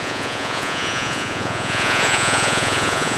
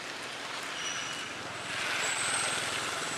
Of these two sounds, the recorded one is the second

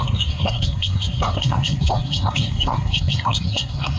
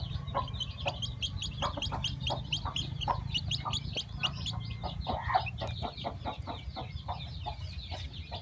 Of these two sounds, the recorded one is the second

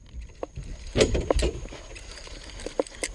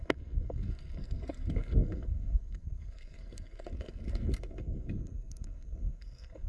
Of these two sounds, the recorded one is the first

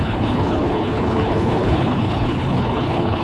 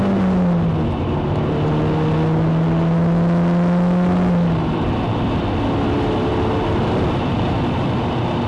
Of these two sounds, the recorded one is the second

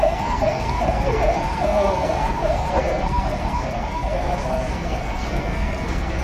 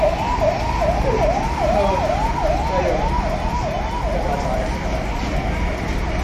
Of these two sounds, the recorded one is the second